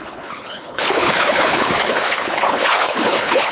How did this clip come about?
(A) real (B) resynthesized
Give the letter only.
B